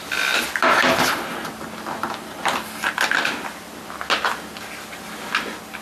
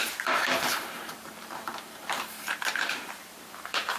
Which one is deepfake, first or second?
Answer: second